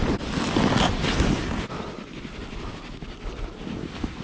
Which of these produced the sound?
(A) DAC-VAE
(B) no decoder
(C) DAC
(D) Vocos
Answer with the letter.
B